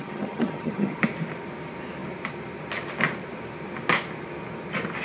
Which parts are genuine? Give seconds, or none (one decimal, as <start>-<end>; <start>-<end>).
1.0-5.0